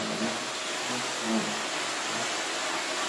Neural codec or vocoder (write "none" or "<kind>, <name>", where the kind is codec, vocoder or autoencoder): none